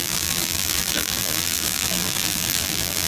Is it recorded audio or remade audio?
remade